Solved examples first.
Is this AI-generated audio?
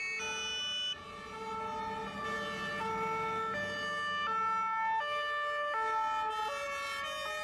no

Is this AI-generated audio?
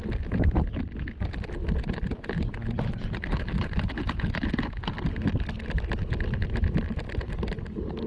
no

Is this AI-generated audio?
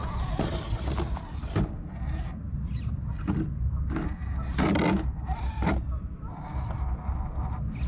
no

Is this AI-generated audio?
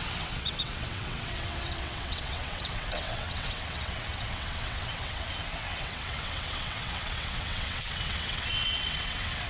yes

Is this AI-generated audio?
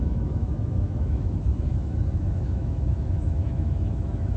yes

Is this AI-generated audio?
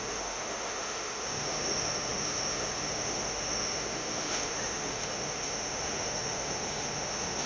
yes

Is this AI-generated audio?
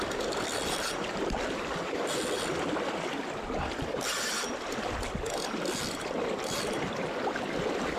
yes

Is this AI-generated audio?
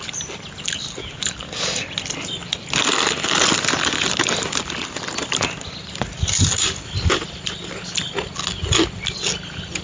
no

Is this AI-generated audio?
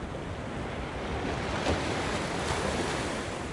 no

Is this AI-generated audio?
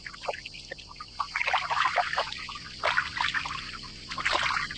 no